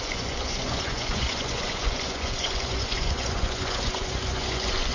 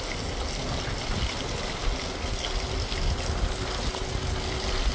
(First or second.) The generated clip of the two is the first